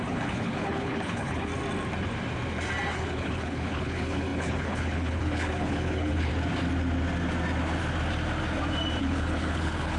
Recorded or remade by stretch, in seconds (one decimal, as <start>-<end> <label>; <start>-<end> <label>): 0.0-1.5 remade; 1.5-2.9 recorded; 2.9-6.3 remade; 6.3-9.0 recorded; 9.0-10.0 remade